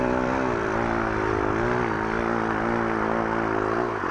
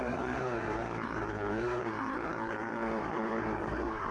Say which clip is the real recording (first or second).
first